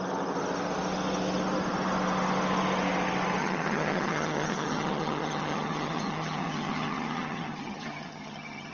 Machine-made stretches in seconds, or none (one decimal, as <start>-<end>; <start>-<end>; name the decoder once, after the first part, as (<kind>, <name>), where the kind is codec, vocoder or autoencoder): 3.4-8.7 (vocoder, HiFi-GAN)